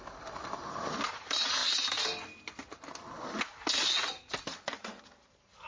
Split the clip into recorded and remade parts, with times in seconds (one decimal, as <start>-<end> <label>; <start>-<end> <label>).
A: 0.0-1.6 remade; 1.6-5.0 recorded; 5.0-5.7 remade